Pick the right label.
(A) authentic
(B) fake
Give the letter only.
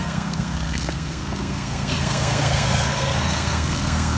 B